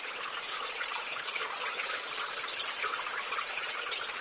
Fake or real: fake